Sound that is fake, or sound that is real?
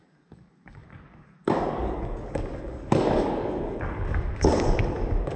fake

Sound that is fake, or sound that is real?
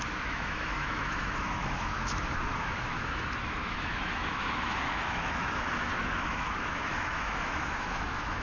fake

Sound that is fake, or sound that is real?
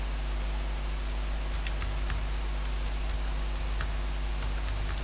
real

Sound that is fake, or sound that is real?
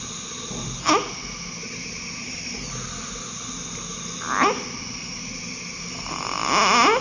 real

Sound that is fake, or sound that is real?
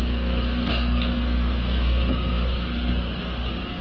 fake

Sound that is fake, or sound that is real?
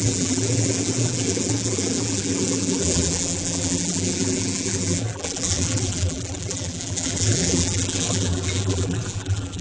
fake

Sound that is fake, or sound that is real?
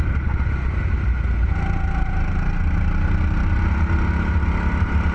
real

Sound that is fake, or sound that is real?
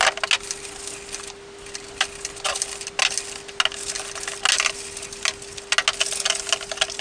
real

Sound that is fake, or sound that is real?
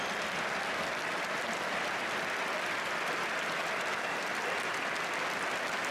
real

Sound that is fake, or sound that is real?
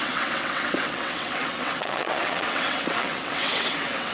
fake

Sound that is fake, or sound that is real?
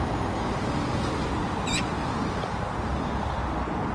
real